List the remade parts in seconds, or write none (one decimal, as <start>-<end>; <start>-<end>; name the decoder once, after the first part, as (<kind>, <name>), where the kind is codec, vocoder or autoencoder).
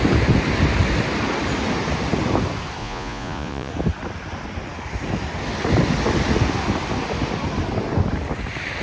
2.8-3.7 (vocoder, Vocos)